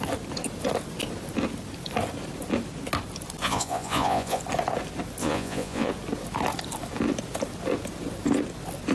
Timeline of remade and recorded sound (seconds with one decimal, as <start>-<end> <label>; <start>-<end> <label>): 0.0-3.4 recorded; 3.4-4.4 remade; 4.4-5.2 recorded; 5.2-5.9 remade; 5.9-8.9 recorded